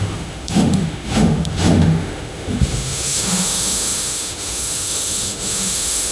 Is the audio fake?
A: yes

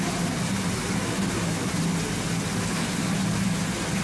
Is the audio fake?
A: no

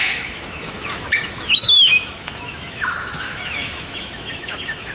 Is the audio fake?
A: yes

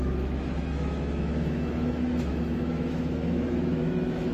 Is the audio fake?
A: yes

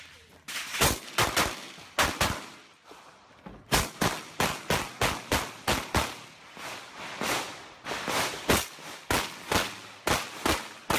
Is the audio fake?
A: no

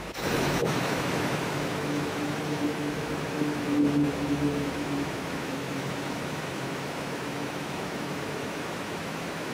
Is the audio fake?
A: yes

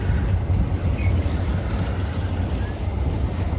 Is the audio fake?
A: no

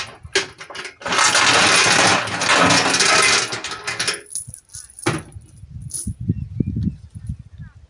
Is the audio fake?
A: no